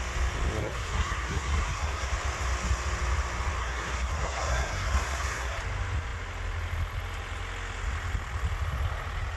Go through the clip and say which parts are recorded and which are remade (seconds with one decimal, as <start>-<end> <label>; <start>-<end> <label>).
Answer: 0.0-0.6 recorded; 0.6-2.1 remade; 2.1-3.6 recorded; 3.6-5.6 remade; 5.6-9.4 recorded